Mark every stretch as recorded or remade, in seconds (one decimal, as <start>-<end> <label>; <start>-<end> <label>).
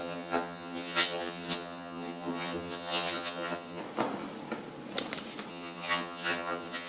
0.0-3.8 remade; 3.8-5.5 recorded; 5.5-6.9 remade